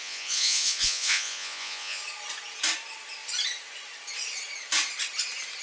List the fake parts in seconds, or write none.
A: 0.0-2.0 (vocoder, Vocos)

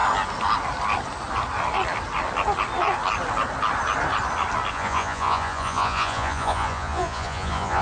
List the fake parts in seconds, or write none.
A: 4.7-7.8 (vocoder, Vocos)

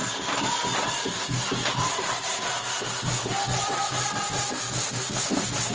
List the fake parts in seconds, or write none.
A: none